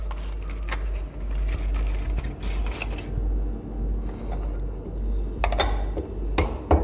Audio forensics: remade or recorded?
recorded